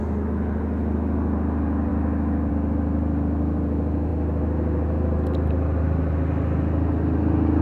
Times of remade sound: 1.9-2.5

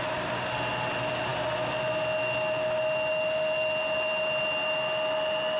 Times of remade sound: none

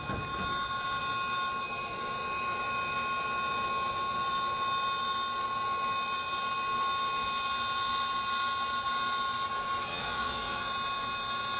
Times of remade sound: 9.9-10.7

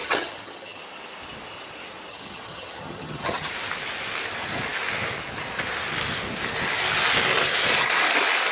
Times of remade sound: 0.0-0.8; 2.1-3.5

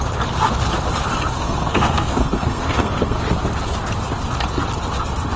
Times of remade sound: 1.1-3.2